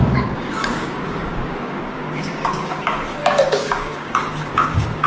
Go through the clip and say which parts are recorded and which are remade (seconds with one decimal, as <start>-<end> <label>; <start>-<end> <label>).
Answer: 0.0-5.1 remade